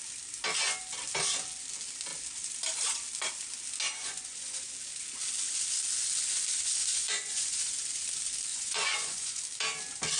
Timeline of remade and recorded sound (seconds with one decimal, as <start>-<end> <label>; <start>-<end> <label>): 0.0-4.0 recorded; 4.0-4.7 remade; 4.7-6.8 recorded; 6.8-7.7 remade; 7.7-8.5 recorded; 8.5-9.4 remade; 9.4-10.2 recorded